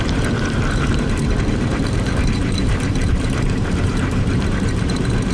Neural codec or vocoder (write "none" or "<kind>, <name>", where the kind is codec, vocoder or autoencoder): vocoder, BigVGAN v2